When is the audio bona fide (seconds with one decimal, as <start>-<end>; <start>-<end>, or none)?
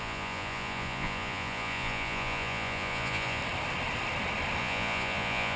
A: 3.4-4.6